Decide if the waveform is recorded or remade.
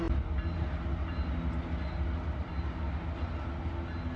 recorded